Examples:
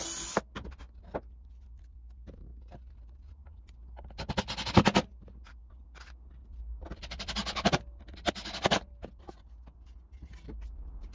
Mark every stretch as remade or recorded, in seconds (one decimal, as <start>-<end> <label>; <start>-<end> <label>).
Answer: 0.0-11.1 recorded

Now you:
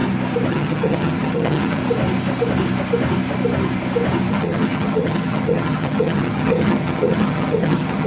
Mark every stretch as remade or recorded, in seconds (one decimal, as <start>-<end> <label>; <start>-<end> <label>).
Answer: 0.0-0.5 recorded; 0.5-1.8 remade; 1.8-4.3 recorded; 4.3-8.1 remade

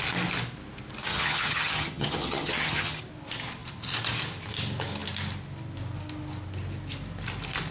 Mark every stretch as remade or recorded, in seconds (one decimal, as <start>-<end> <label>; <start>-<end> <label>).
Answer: 0.0-1.1 recorded; 1.1-3.0 remade; 3.0-7.7 recorded